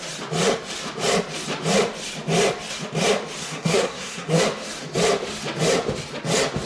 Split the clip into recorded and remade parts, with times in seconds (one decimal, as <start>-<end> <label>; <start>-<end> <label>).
0.0-3.4 recorded; 3.4-4.4 remade; 4.4-6.7 recorded